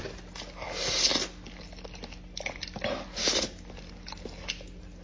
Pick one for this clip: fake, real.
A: real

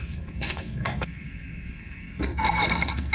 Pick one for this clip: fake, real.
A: fake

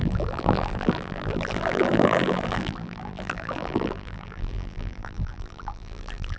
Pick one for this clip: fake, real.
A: fake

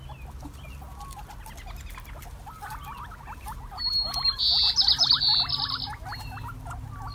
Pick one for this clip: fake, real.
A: real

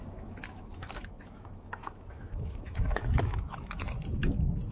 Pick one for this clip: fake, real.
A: fake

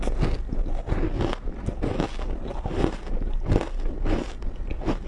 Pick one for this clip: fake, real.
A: real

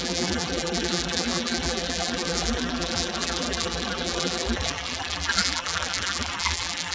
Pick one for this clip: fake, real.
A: fake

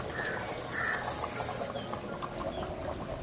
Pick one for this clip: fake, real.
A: real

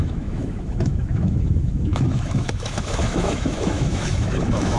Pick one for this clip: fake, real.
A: fake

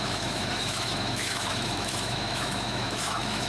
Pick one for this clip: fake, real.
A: fake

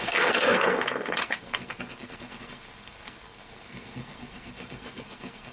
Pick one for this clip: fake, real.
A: fake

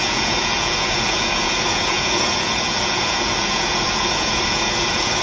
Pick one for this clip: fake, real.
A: fake